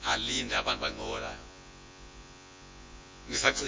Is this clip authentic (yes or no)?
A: no